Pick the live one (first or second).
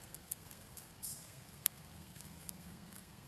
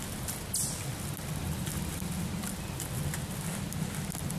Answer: second